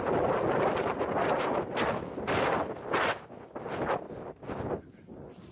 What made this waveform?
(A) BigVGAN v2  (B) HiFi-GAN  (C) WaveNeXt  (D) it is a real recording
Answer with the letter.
D